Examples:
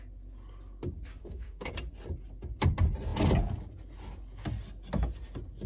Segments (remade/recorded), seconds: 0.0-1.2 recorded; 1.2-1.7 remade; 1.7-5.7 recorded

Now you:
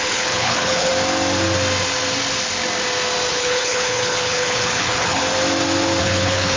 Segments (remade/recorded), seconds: 0.0-0.9 remade; 0.9-3.3 recorded; 3.3-5.2 remade; 5.2-6.0 recorded; 6.0-6.6 remade

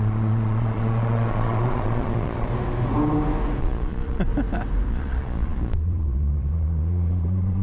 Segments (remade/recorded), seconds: 0.0-2.5 remade; 2.5-3.6 recorded; 3.6-4.3 remade; 4.3-4.9 recorded; 4.9-7.6 remade

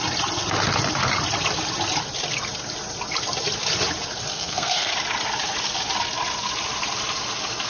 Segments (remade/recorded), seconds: 0.0-4.3 recorded; 4.3-4.9 remade; 4.9-7.7 recorded

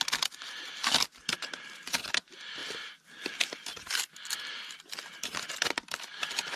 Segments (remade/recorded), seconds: 0.0-6.6 recorded

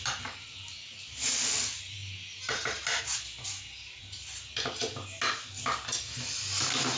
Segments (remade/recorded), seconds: 0.0-7.0 recorded

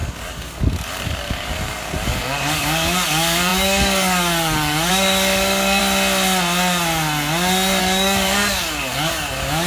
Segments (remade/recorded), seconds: 0.0-5.8 remade; 5.8-7.8 recorded; 7.8-9.7 remade

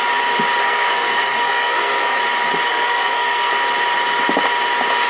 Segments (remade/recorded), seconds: 0.0-0.6 recorded; 0.6-2.2 remade; 2.2-2.7 recorded; 2.7-3.5 remade; 3.5-5.1 recorded